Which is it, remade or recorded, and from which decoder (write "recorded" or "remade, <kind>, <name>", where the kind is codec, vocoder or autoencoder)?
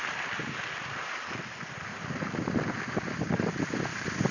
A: recorded